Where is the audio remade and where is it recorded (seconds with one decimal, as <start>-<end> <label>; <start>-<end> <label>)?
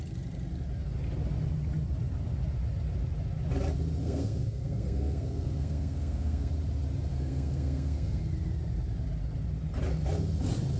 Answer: 0.0-4.0 recorded; 4.0-6.5 remade; 6.5-7.1 recorded; 7.1-8.2 remade; 8.2-10.8 recorded